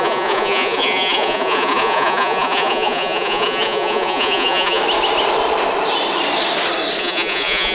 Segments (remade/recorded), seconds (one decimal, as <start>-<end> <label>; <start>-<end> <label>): 0.0-4.8 remade; 4.8-7.0 recorded; 7.0-7.7 remade